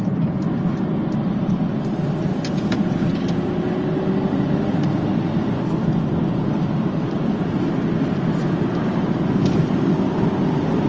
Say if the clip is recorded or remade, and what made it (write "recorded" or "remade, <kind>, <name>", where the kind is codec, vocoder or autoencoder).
recorded